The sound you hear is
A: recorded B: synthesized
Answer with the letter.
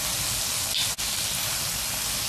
A